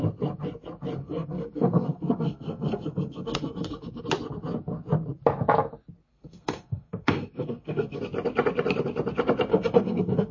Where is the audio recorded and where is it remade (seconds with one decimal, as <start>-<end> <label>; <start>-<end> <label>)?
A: 0.0-1.0 recorded; 1.0-4.0 remade; 4.0-6.1 recorded; 6.1-8.0 remade; 8.0-9.5 recorded; 9.5-10.3 remade